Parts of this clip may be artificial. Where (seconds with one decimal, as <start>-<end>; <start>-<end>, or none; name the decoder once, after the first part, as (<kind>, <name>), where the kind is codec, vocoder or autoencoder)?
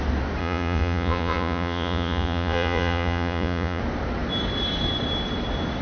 0.4-3.8 (vocoder, Vocos)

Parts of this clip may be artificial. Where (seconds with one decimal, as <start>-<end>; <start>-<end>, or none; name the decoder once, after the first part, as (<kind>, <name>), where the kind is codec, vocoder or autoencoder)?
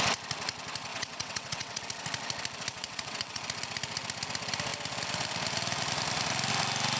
0.9-1.8 (vocoder, WaveNeXt); 2.7-3.4